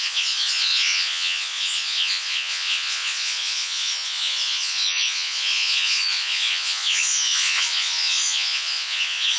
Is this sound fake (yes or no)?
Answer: yes